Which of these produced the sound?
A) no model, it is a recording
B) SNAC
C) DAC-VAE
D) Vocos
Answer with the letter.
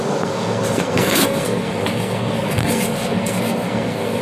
B